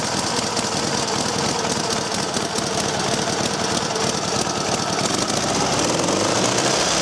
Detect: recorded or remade recorded